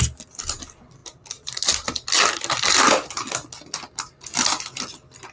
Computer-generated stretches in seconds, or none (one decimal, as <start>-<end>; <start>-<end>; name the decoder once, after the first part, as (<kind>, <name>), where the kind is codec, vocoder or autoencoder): none